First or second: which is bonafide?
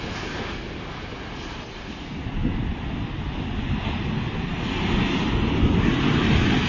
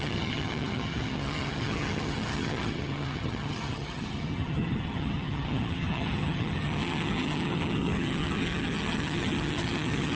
first